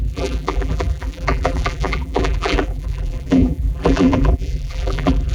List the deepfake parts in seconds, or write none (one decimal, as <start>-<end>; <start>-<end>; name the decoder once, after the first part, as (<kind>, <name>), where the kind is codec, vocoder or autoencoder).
0.0-5.3 (vocoder, BigVGAN v2)